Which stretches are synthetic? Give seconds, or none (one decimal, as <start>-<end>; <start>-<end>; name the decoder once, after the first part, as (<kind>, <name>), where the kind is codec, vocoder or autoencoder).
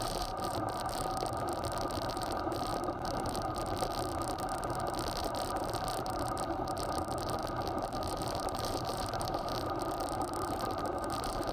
0.0-1.5 (vocoder, BigVGAN v2); 2.1-2.7; 5.2-7.4; 8.1-11.5